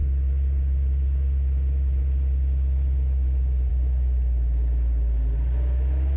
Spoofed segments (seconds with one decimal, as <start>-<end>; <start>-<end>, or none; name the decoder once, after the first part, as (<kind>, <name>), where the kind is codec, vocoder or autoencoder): none